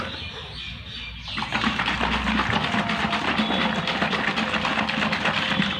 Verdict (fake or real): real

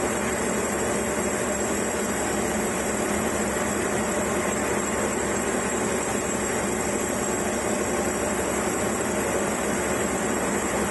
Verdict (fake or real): real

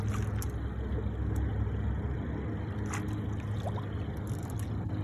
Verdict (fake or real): real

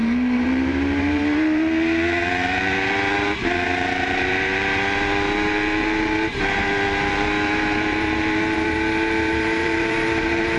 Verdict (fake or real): fake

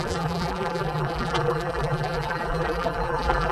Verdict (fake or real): fake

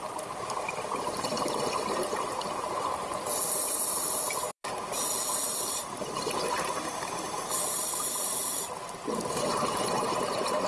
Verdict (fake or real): fake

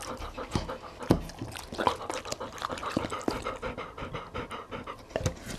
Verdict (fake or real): real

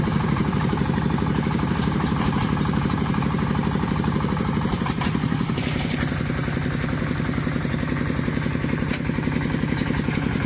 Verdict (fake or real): fake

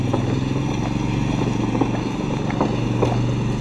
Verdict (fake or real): real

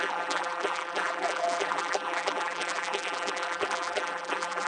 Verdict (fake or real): fake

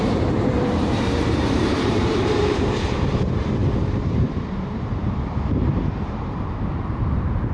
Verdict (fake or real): fake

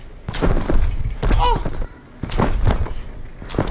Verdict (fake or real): real